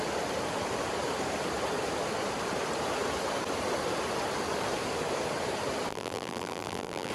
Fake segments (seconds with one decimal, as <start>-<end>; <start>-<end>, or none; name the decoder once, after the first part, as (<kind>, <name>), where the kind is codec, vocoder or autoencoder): 5.9-7.1 (vocoder, BigVGAN v2)